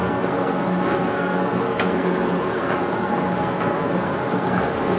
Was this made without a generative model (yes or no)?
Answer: no